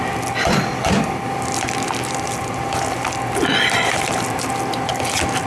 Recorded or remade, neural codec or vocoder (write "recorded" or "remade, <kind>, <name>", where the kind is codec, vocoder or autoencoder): recorded